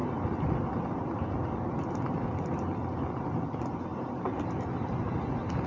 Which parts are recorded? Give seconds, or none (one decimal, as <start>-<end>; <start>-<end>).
0.0-3.9; 4.4-5.7